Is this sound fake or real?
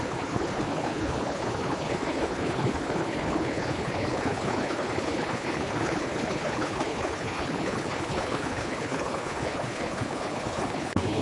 fake